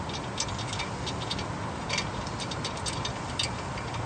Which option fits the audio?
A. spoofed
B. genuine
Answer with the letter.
B